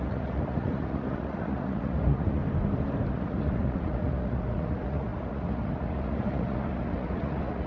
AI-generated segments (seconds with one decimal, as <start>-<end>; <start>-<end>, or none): 0.0-2.4; 3.1-7.7